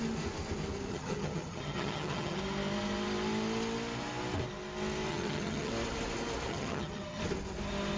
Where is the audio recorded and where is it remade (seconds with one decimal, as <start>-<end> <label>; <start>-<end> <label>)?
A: 0.0-0.9 recorded; 0.9-2.4 remade; 2.4-5.1 recorded; 5.1-5.7 remade; 5.7-6.5 recorded; 6.5-7.2 remade; 7.2-8.0 recorded